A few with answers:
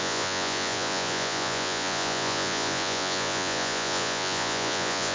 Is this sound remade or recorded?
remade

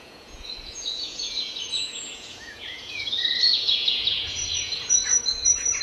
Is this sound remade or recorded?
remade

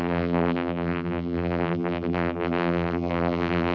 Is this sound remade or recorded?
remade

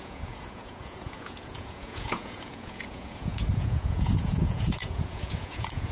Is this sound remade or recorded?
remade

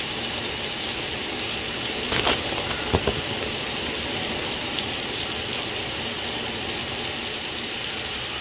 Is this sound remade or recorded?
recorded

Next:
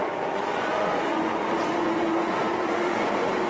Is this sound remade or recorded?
remade